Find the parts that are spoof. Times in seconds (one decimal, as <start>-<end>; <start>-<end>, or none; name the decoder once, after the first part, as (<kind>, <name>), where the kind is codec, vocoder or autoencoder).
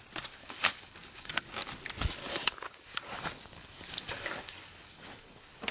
0.4-1.5 (codec, DAC); 2.2-5.7